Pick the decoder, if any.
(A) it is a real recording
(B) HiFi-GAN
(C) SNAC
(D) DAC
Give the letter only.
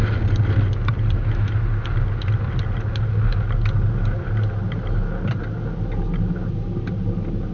A